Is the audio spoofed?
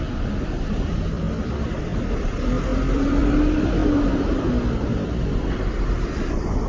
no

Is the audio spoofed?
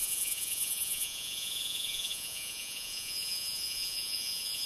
yes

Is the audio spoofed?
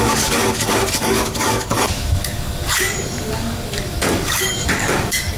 yes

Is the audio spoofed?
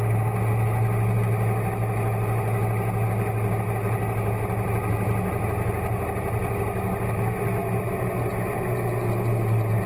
no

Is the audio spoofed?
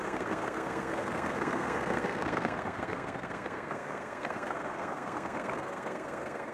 yes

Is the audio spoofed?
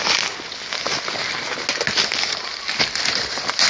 no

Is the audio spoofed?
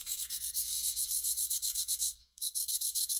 yes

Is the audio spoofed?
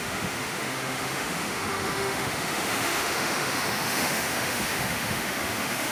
yes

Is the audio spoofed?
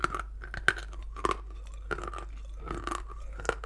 no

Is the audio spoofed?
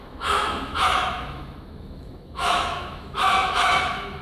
yes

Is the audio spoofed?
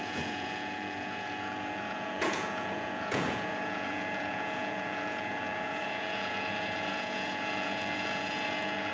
yes